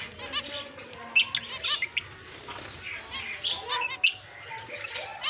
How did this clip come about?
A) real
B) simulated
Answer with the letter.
A